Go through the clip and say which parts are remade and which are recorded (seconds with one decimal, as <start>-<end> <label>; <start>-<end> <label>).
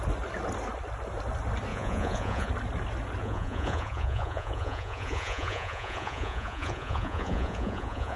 0.0-1.7 recorded; 1.7-2.5 remade; 2.5-3.2 recorded; 3.2-8.2 remade